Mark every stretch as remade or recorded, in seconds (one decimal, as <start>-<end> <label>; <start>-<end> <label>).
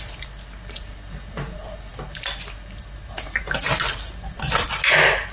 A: 0.0-5.3 recorded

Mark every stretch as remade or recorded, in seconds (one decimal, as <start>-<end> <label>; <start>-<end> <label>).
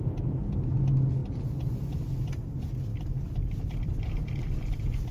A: 0.0-2.9 recorded; 2.9-4.4 remade; 4.4-5.1 recorded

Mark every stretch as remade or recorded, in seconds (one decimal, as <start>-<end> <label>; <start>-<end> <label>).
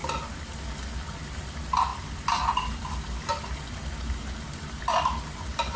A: 0.0-1.9 recorded; 1.9-3.8 remade; 3.8-5.8 recorded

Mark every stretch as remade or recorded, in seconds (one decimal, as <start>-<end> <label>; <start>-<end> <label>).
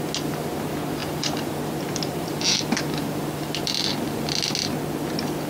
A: 0.0-1.0 recorded; 1.0-4.3 remade; 4.3-5.5 recorded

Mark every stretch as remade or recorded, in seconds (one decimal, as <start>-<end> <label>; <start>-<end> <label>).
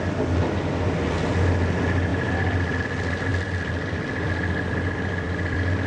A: 0.0-2.1 recorded; 2.1-2.8 remade; 2.8-3.3 recorded; 3.3-5.9 remade